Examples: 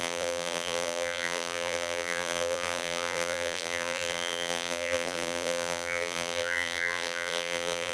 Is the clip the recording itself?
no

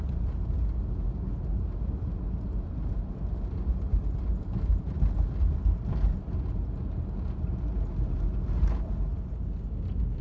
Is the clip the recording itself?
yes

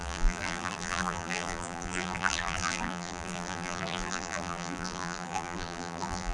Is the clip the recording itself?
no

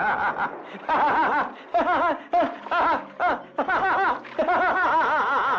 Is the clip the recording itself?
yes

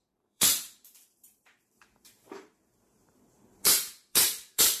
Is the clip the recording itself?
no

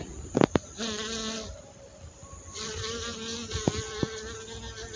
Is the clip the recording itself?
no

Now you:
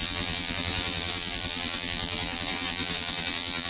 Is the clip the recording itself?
no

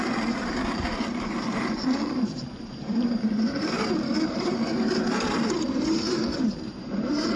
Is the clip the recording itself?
no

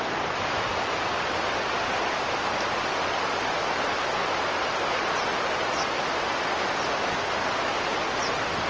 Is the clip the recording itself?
no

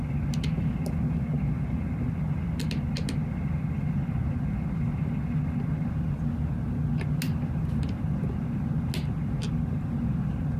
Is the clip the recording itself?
yes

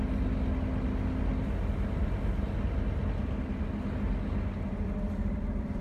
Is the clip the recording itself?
yes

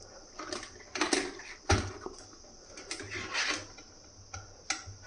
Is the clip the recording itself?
yes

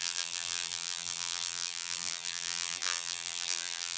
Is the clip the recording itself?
no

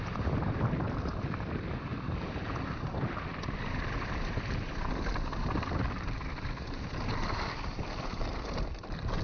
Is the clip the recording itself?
no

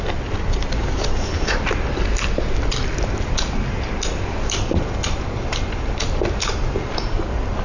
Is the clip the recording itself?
no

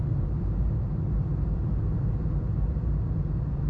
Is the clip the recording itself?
no